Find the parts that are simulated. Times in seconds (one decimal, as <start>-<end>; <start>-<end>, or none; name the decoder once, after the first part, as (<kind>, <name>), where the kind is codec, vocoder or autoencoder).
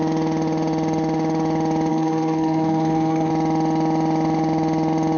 1.9-3.3 (codec, SNAC)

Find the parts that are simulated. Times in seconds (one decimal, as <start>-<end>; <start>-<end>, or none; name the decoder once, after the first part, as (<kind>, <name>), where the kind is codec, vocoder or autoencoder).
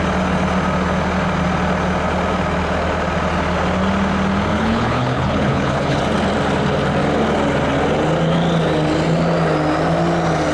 4.5-6.0 (codec, HILCodec)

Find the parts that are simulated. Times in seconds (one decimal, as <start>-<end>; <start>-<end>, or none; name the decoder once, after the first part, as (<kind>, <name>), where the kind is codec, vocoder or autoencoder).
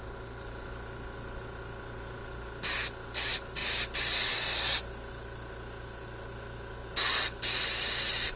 none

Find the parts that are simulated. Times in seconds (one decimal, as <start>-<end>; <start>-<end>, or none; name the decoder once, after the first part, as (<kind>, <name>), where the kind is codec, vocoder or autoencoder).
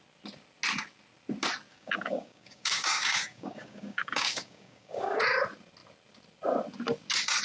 1.7-5.2 (codec, DAC)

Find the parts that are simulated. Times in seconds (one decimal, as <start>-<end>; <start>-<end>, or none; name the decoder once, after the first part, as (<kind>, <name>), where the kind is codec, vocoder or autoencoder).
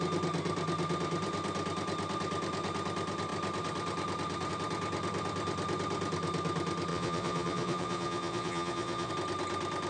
6.9-9.1 (vocoder, Vocos)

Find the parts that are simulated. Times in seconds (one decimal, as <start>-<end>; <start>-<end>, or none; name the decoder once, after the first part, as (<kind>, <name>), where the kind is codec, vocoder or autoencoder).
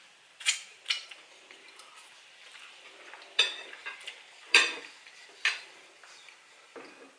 0.7-1.9 (vocoder, BigVGAN v2); 2.5-3.4; 3.8-4.9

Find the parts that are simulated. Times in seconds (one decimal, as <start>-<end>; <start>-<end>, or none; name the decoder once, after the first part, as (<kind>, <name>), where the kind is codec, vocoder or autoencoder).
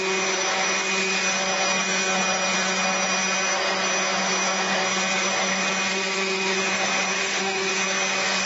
7.2-7.7 (autoencoder, DAC-VAE)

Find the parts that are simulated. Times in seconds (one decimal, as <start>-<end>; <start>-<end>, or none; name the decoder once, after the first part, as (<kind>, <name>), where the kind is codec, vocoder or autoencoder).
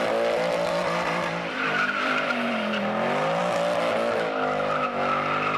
0.8-2.8 (vocoder, BigVGAN v2)